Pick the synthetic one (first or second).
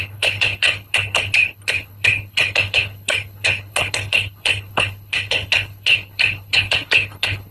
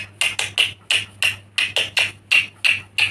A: first